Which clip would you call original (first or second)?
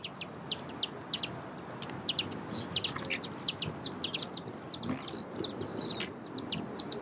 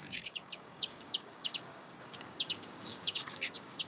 first